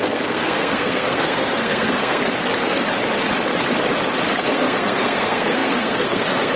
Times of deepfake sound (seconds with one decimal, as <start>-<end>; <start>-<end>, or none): 0.0-2.2; 4.4-6.6